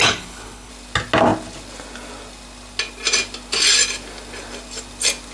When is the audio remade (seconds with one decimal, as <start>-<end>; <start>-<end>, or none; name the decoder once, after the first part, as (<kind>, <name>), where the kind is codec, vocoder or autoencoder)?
0.0-0.7 (codec, HILCodec)